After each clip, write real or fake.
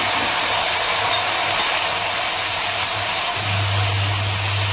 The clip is real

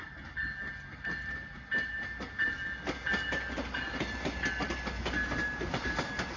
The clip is real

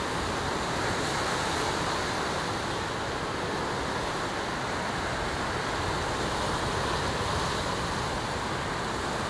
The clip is real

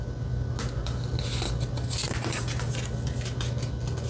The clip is real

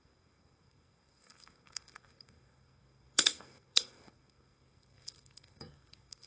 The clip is fake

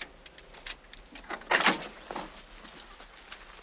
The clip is real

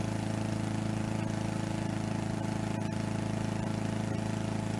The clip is real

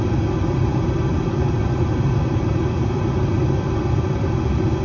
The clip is real